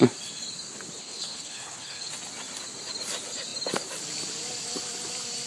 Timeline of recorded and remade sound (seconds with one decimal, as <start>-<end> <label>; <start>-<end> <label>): 0.0-1.0 recorded; 1.0-2.1 remade; 2.1-5.5 recorded